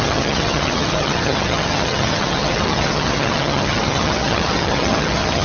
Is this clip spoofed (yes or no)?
yes